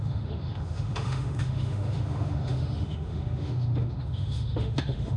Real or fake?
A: fake